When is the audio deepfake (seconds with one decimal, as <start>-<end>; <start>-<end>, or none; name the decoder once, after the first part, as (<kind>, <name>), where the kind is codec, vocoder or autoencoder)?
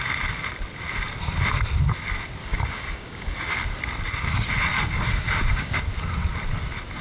2.4-3.8 (codec, DAC); 4.7-5.8